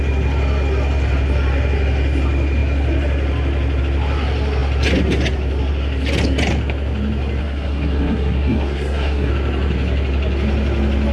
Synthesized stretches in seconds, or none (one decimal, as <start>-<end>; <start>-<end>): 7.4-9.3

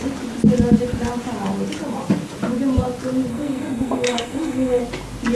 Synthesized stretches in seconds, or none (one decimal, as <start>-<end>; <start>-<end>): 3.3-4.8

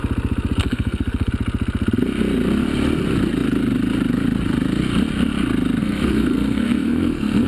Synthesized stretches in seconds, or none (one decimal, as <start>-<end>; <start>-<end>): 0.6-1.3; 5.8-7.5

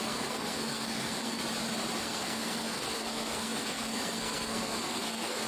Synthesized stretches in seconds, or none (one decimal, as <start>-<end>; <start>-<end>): 0.0-1.4; 2.0-5.5

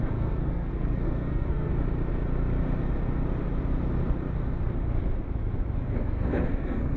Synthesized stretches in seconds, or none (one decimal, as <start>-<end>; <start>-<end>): 0.0-1.7; 5.9-7.0

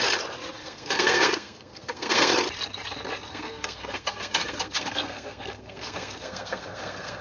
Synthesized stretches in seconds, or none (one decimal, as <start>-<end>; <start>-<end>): 0.6-2.3; 3.3-7.2

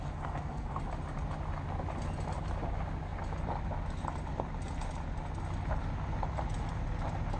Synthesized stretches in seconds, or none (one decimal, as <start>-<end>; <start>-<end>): 0.0-0.8